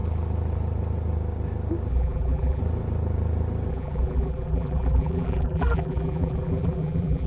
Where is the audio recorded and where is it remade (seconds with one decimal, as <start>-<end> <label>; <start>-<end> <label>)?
0.0-1.9 recorded; 1.9-2.6 remade; 2.6-3.7 recorded; 3.7-7.3 remade